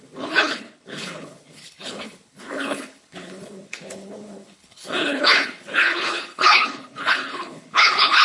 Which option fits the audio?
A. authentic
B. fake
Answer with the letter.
B